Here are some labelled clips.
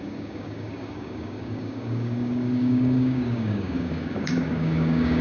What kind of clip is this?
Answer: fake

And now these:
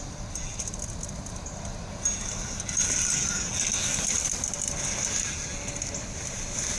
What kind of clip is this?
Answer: real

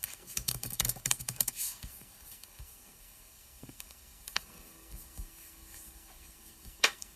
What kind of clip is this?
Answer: fake